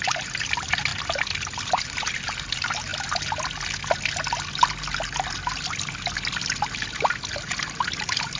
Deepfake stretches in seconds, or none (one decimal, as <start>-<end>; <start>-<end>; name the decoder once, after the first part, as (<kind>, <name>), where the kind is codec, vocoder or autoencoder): 0.0-0.9 (vocoder, BigVGAN v2); 1.7-2.9; 7.9-8.4